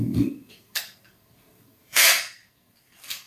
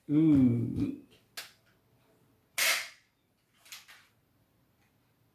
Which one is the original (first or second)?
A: second